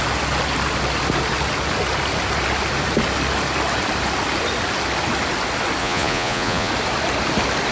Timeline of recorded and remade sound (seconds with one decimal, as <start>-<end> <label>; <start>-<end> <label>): 0.0-5.8 recorded; 5.8-6.7 remade; 6.7-7.7 recorded